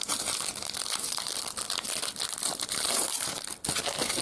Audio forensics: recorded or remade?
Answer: remade